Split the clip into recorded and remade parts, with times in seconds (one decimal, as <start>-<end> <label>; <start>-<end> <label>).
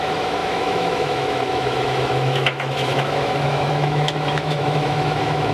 0.0-5.5 remade